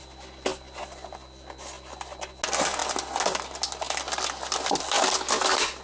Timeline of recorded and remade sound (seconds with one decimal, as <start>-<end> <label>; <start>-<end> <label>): 0.0-5.8 recorded